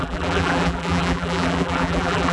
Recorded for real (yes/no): no